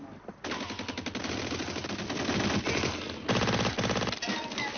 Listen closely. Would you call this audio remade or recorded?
recorded